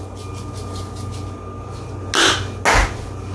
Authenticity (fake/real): real